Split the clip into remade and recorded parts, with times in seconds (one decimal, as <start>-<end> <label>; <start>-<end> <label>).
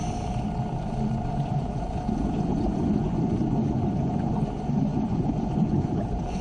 0.0-1.3 recorded; 1.3-6.4 remade